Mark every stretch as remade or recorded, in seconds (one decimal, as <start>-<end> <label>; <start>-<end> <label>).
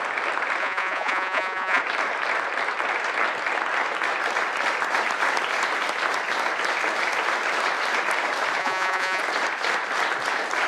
0.0-0.6 recorded; 0.6-1.8 remade; 1.8-8.6 recorded; 8.6-9.2 remade; 9.2-10.7 recorded